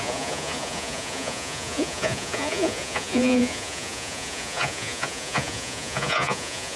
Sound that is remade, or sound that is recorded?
remade